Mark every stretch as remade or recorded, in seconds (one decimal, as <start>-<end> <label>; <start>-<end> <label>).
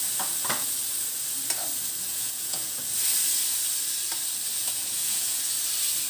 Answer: 0.0-2.1 recorded; 2.1-2.8 remade; 2.8-4.6 recorded; 4.6-5.4 remade; 5.4-6.1 recorded